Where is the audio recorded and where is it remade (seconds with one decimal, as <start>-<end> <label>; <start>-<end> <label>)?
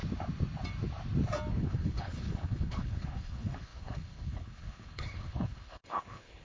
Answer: 0.0-1.5 recorded; 1.5-6.4 remade